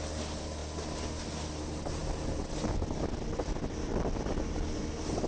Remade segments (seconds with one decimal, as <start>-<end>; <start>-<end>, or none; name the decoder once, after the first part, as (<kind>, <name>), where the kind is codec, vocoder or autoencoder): none